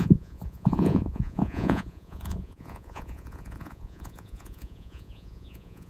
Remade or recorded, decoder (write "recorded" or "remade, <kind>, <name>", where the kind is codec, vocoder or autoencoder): remade, vocoder, Vocos